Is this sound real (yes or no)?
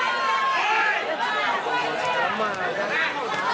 yes